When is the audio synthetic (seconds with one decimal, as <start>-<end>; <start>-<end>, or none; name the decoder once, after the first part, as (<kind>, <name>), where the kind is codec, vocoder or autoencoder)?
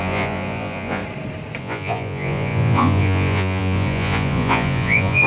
0.0-1.0 (vocoder, Vocos); 1.6-5.3